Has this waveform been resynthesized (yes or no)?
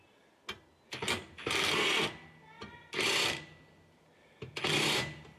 no